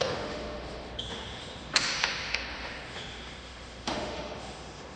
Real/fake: fake